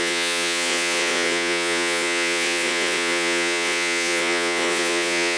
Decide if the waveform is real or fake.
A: fake